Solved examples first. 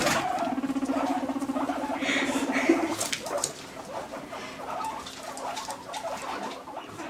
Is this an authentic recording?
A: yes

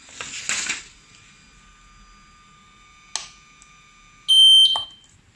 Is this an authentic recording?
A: yes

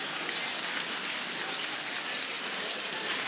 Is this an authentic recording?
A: yes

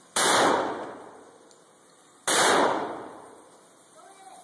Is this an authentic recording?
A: yes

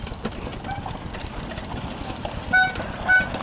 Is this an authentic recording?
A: yes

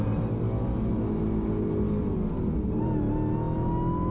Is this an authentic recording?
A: yes